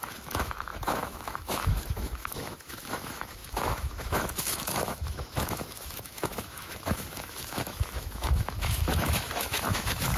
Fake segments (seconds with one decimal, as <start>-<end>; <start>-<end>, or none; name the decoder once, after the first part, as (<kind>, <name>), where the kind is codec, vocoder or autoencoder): 0.0-10.2 (autoencoder, DAC-VAE)